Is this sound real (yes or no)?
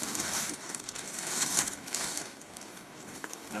no